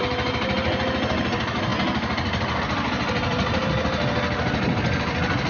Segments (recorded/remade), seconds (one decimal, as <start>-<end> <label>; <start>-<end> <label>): 0.0-5.5 recorded